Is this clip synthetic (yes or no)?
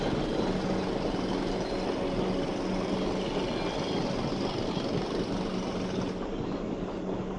no